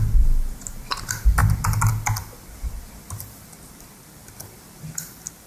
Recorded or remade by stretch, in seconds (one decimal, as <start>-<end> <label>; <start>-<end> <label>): 0.0-5.5 recorded